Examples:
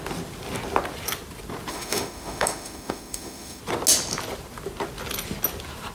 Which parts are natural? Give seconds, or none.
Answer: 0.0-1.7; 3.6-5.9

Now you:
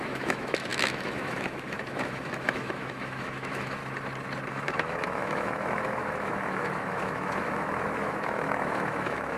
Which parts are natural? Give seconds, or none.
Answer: 3.8-4.5

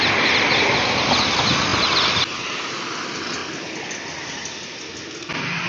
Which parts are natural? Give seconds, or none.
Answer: 0.0-5.7

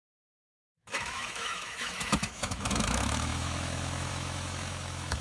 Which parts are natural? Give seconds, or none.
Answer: none

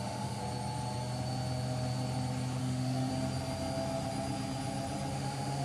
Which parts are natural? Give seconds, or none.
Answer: 0.4-2.6; 3.1-5.1

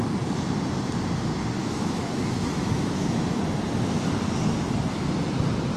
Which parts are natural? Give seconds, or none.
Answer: 0.0-1.6; 3.4-5.8

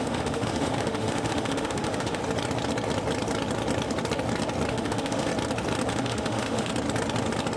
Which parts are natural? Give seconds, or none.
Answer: 2.2-4.7; 5.3-5.9; 6.7-7.6

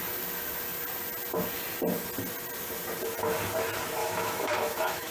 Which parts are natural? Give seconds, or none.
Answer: 0.0-4.0